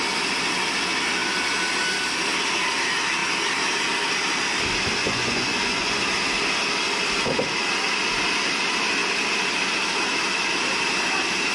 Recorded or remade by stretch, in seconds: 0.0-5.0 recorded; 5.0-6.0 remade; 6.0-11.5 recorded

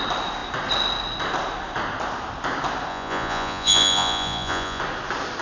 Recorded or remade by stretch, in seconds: 0.0-2.9 recorded; 2.9-4.8 remade; 4.8-5.4 recorded